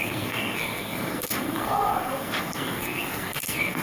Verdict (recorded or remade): remade